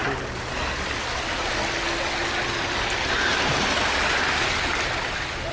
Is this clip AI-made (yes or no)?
no